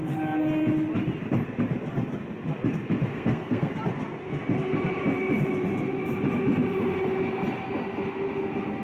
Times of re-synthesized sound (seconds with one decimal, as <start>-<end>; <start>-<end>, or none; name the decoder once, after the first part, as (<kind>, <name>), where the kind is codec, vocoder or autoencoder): 3.1-3.7 (codec, SNAC)